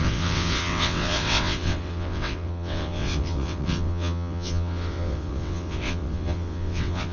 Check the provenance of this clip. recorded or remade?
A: remade